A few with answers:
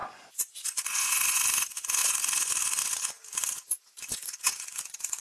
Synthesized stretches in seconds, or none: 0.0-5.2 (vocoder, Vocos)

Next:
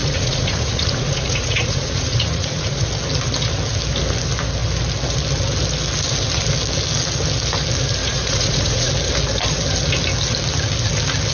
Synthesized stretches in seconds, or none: 0.0-2.9 (vocoder, Vocos); 8.0-8.9

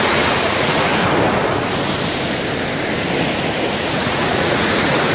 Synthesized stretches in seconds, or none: 0.0-0.9 (vocoder, Vocos); 4.0-5.1

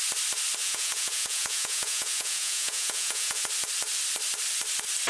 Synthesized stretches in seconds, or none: 0.6-3.4 (vocoder, Vocos)

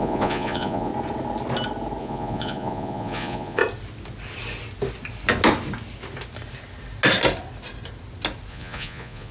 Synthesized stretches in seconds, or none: 0.0-0.9 (vocoder, Vocos); 2.0-3.6; 8.5-9.3

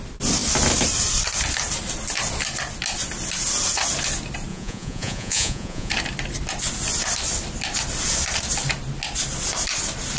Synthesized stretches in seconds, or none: 4.5-5.9 (vocoder, Vocos)

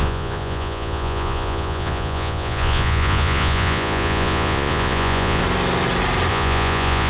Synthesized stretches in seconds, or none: 0.0-5.4 (vocoder, Vocos); 6.3-7.1

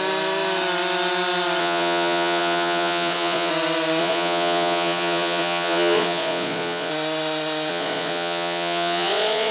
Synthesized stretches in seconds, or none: 1.6-3.5 (vocoder, Vocos); 4.0-6.9; 7.7-9.5